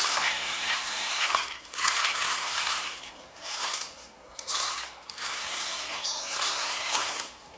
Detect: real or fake fake